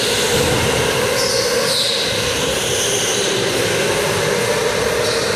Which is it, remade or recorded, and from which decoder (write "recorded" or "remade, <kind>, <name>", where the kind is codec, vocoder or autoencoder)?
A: recorded